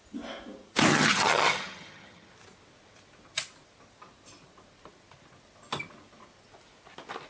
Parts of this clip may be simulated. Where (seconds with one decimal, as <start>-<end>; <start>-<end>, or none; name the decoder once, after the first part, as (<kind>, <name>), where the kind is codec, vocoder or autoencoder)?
0.9-2.3 (vocoder, HiFi-GAN)